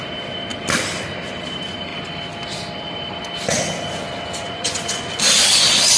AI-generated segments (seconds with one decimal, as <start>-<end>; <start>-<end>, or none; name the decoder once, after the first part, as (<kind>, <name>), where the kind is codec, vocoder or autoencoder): 4.4-5.2 (vocoder, Vocos)